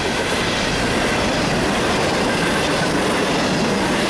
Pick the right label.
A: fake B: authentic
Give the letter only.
B